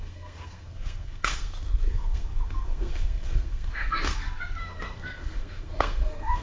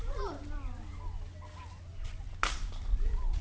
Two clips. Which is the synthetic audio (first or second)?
first